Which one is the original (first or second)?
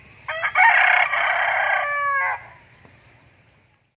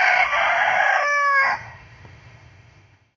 first